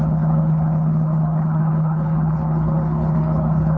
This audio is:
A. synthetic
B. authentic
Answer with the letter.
A